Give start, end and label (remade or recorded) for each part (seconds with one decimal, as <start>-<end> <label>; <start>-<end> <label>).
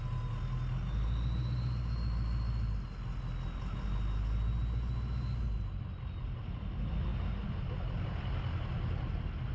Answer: 0.0-9.5 recorded